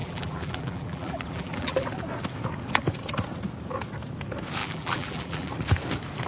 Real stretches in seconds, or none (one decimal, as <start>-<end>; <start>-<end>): 1.9-4.6; 5.5-6.3